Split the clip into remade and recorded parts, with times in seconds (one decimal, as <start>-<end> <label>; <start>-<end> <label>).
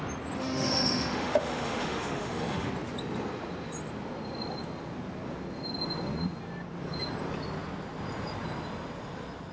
0.0-0.4 recorded; 0.4-2.7 remade; 2.7-9.5 recorded